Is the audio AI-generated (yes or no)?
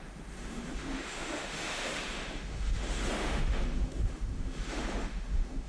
yes